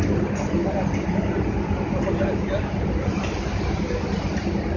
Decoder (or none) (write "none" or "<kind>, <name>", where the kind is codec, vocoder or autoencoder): none